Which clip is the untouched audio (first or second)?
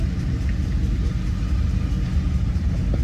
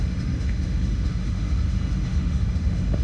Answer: first